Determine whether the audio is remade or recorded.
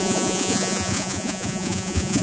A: remade